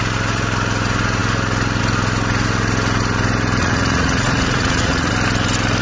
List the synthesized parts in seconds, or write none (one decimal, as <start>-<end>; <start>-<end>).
3.6-5.1